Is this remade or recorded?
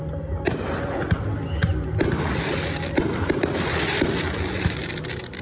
recorded